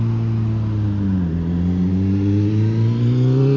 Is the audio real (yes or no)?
yes